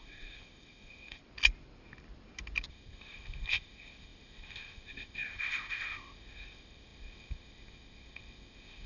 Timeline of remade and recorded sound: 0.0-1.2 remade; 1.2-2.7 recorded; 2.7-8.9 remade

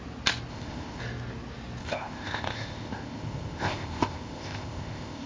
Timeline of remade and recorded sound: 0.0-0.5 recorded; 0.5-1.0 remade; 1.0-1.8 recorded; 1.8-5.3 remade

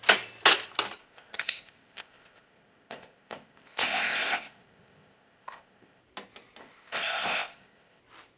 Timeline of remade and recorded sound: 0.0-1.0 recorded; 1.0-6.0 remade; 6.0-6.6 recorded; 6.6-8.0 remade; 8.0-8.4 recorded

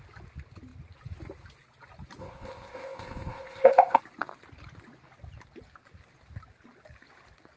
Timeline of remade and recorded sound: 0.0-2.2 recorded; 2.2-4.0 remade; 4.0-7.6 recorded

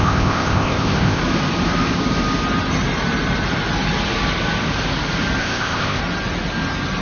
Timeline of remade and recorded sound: 0.0-1.2 remade; 1.2-5.4 recorded; 5.4-6.0 remade; 6.0-7.0 recorded

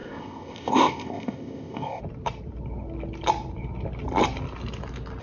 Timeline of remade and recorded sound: 0.0-2.0 remade; 2.0-5.2 recorded